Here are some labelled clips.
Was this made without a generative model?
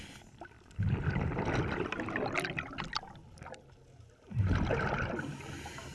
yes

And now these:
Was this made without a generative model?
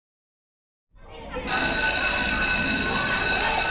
yes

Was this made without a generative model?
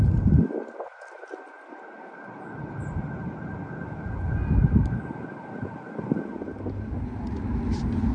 yes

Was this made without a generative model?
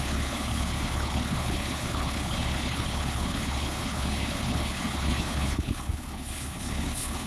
no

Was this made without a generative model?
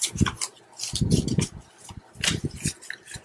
yes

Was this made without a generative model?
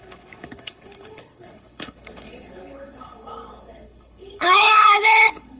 no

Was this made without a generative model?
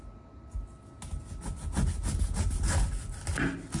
yes